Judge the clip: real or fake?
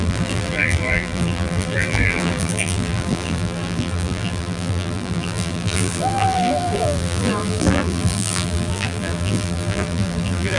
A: fake